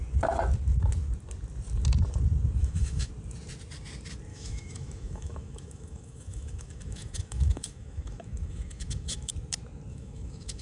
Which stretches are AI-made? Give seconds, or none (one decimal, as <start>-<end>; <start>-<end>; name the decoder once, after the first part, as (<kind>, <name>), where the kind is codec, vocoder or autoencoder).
2.6-3.1 (autoencoder, DAC-VAE); 4.3-9.3; 9.9-10.6